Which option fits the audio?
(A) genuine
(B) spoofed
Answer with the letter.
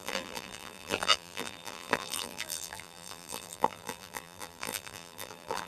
B